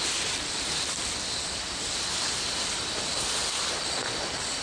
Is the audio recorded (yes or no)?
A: yes